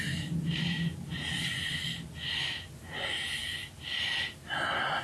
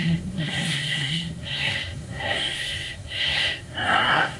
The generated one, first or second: second